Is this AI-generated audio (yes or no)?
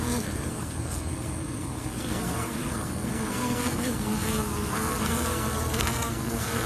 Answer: yes